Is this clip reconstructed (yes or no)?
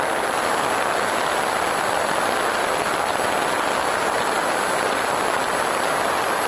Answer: no